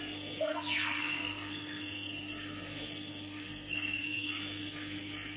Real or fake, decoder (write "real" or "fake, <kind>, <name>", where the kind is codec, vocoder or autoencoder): fake, codec, SNAC